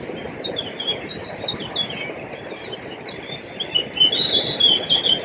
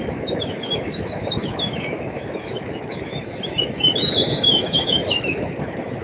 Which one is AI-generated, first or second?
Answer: second